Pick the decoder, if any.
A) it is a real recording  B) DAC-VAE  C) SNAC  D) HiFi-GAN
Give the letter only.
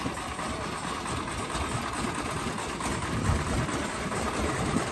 A